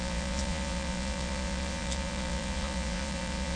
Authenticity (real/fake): fake